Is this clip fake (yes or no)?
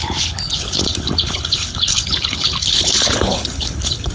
yes